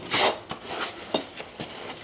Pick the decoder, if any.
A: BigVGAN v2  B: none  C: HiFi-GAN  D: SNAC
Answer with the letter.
B